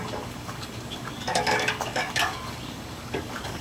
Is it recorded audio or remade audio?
remade